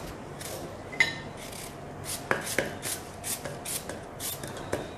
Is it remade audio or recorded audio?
recorded